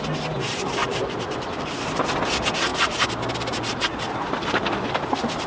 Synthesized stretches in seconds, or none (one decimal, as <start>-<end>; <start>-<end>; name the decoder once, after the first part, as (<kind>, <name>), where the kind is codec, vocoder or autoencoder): 0.8-1.8 (vocoder, BigVGAN v2); 2.7-5.0